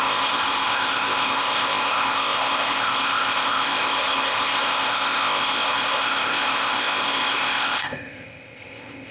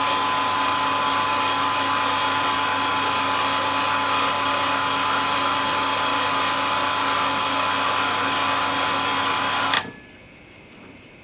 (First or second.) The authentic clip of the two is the second